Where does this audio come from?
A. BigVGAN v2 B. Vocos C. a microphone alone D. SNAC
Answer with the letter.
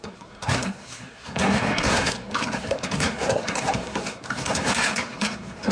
D